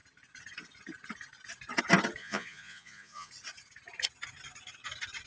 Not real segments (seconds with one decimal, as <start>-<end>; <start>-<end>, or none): 2.2-3.3